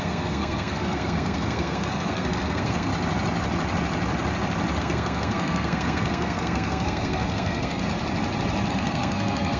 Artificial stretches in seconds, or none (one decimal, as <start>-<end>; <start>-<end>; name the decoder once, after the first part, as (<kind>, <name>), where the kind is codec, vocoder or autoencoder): 0.0-2.9 (codec, SNAC); 4.8-7.8; 8.7-9.6